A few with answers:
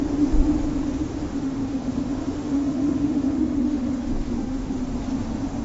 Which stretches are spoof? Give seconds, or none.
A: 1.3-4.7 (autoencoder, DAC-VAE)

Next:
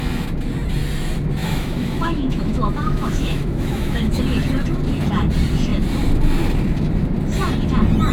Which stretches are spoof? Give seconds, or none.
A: 1.4-4.2 (autoencoder, DAC-VAE)

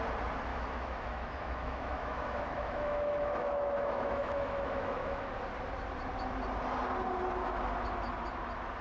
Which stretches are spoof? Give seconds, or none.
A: 0.5-5.3 (autoencoder, DAC-VAE)

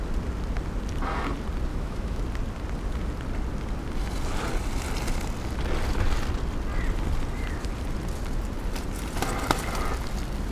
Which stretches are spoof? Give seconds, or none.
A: 1.7-2.2 (autoencoder, DAC-VAE)

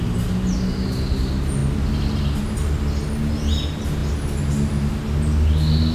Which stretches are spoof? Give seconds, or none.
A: none

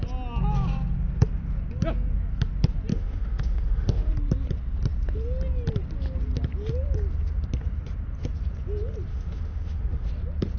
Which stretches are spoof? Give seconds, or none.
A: 2.9-4.1 (autoencoder, DAC-VAE); 9.1-10.1